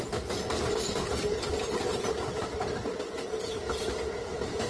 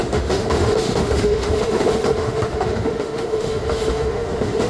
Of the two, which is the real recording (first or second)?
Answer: first